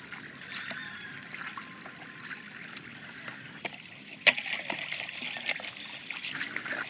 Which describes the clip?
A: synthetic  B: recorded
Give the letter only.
B